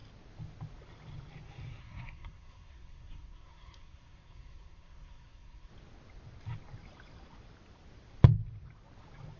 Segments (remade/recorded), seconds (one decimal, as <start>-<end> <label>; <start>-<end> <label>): 0.0-1.8 recorded; 1.8-5.7 remade; 5.7-9.4 recorded